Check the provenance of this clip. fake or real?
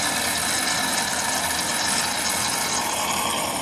real